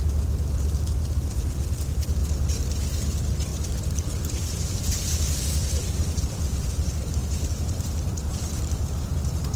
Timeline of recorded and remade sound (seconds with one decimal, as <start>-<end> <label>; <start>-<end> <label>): 0.0-2.2 remade; 2.2-2.8 recorded; 2.8-9.6 remade